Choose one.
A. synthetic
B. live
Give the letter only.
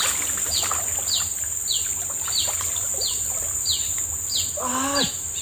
B